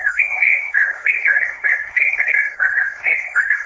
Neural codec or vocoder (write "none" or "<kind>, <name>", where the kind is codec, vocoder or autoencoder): codec, SNAC